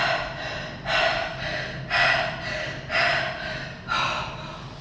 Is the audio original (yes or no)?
yes